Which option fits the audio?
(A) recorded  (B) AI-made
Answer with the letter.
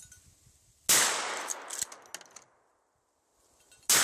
A